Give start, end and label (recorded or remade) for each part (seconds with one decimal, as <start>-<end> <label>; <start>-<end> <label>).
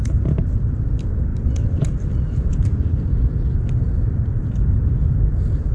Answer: 0.0-5.7 recorded